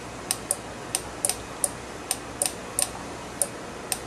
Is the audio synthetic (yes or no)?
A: no